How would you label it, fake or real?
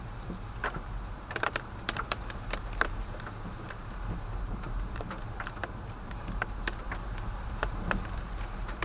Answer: fake